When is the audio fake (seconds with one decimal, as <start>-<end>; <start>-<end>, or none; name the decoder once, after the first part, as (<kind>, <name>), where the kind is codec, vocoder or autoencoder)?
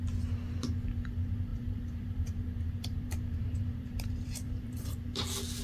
1.5-4.8 (vocoder, BigVGAN v2)